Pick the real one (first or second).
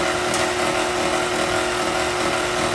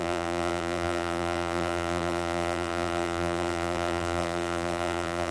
first